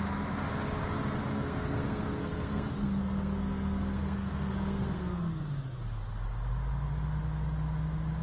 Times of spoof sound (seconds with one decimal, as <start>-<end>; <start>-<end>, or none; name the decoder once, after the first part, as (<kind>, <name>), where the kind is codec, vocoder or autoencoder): 1.3-5.4 (codec, SNAC)